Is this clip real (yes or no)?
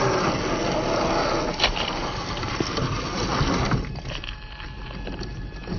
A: yes